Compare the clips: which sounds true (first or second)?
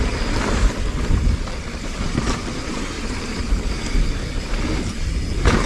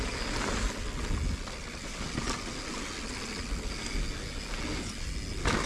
second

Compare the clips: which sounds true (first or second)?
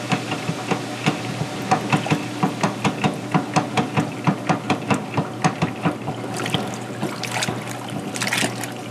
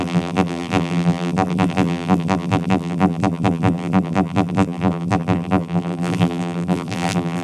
first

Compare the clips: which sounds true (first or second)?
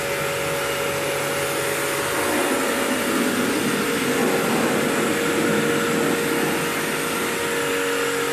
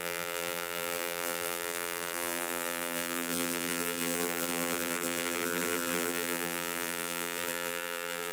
first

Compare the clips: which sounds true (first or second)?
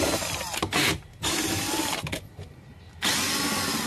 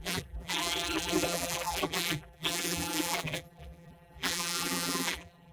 first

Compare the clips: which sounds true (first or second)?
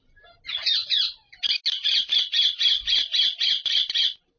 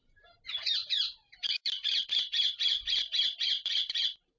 first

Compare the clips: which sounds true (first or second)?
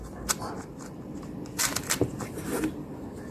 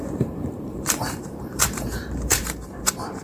first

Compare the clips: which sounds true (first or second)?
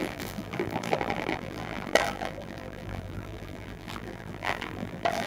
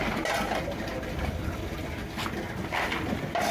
second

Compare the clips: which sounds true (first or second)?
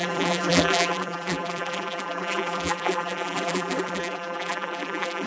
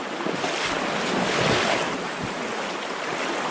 second